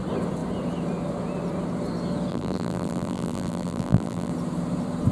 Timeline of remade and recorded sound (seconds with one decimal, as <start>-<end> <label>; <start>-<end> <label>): 0.0-2.3 recorded; 2.3-4.3 remade; 4.3-5.1 recorded